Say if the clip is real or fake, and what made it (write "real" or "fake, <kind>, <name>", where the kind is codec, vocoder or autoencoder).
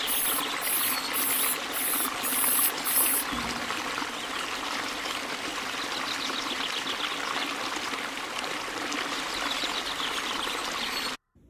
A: real